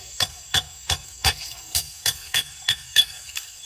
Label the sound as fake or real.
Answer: fake